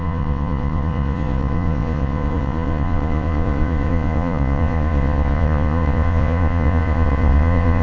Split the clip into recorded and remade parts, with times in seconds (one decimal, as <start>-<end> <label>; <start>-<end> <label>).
0.0-7.8 remade